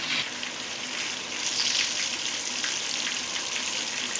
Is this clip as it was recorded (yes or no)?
yes